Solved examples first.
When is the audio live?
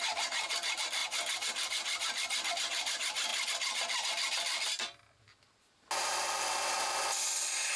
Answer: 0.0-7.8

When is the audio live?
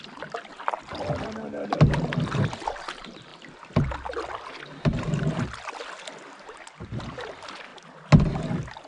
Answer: 0.0-8.9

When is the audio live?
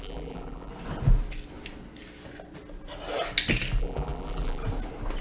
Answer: 0.7-3.8; 4.6-5.2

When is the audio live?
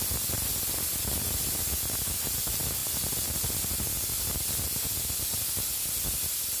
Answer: 0.0-6.6